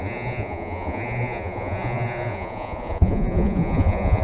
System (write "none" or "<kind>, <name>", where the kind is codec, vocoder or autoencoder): vocoder, Vocos